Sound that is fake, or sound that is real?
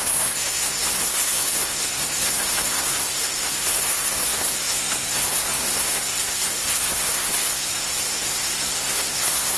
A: fake